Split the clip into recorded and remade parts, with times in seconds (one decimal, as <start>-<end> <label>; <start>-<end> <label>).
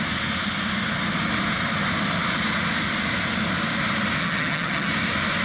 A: 0.0-4.2 recorded; 4.2-4.9 remade; 4.9-5.4 recorded